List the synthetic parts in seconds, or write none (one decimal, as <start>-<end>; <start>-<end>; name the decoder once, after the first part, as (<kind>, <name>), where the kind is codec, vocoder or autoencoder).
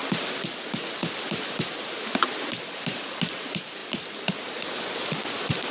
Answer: none